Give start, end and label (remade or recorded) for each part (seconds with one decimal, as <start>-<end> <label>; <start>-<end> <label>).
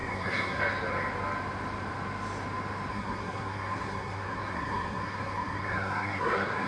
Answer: 0.0-0.6 remade; 0.6-2.9 recorded; 2.9-6.7 remade